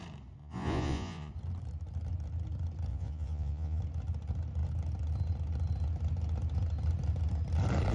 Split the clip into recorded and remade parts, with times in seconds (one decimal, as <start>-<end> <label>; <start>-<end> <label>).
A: 0.0-0.4 recorded; 0.4-1.3 remade; 1.3-2.9 recorded; 2.9-3.8 remade; 3.8-7.9 recorded